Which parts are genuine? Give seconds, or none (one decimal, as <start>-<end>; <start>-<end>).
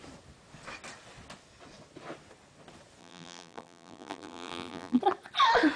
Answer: 0.0-3.0; 5.0-5.8